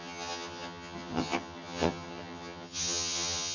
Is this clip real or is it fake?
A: fake